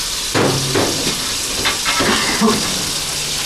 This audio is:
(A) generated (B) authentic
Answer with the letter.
B